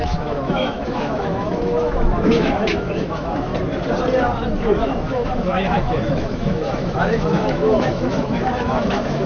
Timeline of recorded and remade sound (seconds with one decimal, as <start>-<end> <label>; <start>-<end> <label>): 0.0-3.5 remade; 3.5-4.8 recorded; 4.8-9.3 remade